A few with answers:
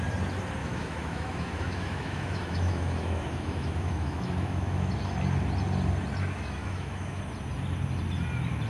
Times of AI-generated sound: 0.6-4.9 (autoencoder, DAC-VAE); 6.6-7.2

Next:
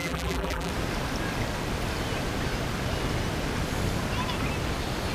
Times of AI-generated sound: 0.0-0.7 (vocoder, BigVGAN v2)